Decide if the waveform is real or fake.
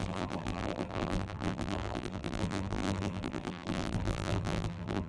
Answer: fake